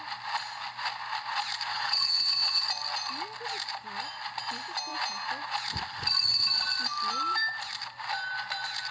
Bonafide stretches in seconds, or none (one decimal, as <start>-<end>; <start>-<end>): 0.0-1.7; 2.6-8.9